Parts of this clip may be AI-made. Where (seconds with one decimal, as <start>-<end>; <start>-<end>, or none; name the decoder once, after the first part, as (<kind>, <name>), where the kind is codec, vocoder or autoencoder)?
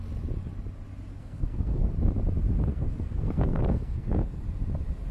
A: 1.1-1.9 (codec, SNAC); 2.7-4.4